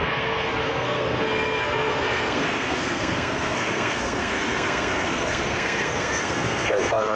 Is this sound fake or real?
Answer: fake